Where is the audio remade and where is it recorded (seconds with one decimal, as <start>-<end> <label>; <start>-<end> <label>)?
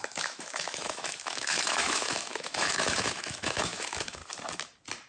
0.0-4.2 remade; 4.2-5.1 recorded